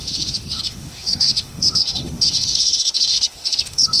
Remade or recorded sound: remade